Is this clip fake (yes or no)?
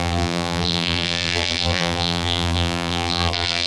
yes